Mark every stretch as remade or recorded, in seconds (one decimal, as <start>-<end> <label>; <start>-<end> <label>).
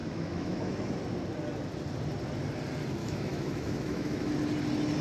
0.0-0.9 remade; 0.9-3.0 recorded; 3.0-4.3 remade; 4.3-5.0 recorded